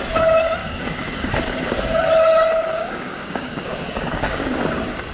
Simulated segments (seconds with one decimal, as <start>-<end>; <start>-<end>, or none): 0.6-1.3; 2.7-4.6